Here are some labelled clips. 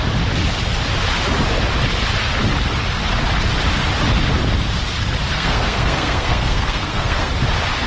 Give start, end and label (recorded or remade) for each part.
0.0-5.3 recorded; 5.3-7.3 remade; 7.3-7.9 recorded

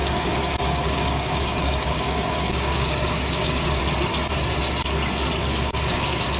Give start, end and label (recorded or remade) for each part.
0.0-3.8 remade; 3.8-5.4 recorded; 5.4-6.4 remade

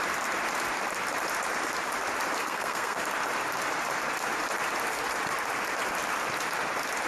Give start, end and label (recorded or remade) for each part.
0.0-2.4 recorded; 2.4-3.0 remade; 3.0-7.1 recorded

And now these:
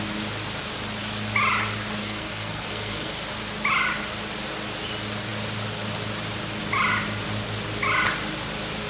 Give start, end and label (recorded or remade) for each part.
0.0-2.0 recorded; 2.0-3.1 remade; 3.1-8.9 recorded

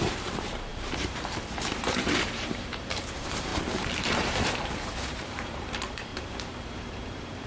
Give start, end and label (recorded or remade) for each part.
0.0-3.5 remade; 3.5-4.0 recorded; 4.0-6.1 remade; 6.1-6.6 recorded; 6.6-7.5 remade

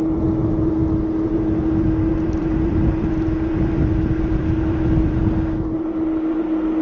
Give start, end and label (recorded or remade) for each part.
0.0-2.4 recorded; 2.4-5.2 remade; 5.2-6.8 recorded

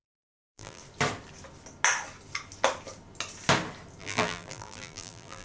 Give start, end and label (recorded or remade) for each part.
0.0-0.8 remade; 0.8-4.0 recorded; 4.0-5.4 remade